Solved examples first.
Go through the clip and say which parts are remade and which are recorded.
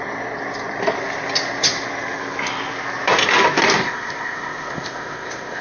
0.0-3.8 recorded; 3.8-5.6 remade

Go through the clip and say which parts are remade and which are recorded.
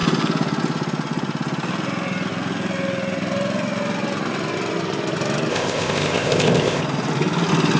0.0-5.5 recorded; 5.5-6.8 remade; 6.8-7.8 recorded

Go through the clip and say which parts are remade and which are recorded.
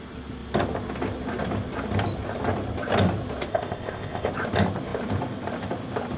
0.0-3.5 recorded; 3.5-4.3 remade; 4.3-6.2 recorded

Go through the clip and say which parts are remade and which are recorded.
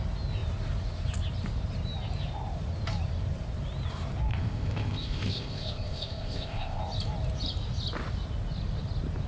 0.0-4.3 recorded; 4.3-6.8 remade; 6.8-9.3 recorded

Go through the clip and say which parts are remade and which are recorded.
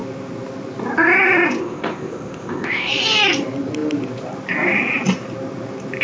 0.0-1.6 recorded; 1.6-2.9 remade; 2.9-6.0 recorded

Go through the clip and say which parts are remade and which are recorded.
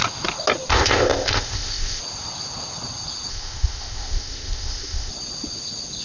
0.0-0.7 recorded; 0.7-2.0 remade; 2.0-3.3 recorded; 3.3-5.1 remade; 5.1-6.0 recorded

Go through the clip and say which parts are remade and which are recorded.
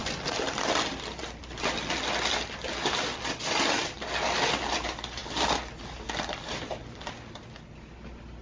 0.0-8.4 recorded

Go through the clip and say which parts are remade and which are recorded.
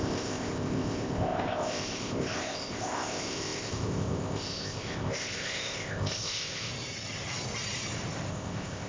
0.0-6.7 remade; 6.7-8.3 recorded; 8.3-8.9 remade